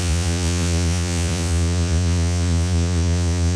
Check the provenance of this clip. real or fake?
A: fake